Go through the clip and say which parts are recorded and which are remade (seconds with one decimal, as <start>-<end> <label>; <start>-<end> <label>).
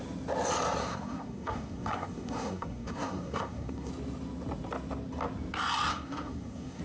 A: 0.0-0.8 recorded; 0.8-3.9 remade; 3.9-5.9 recorded; 5.9-6.8 remade